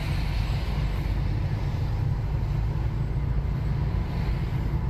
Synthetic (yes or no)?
no